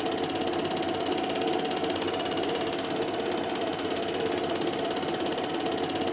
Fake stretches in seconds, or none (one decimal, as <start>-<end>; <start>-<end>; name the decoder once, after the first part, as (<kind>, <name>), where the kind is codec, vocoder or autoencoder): 1.8-5.5 (vocoder, BigVGAN v2)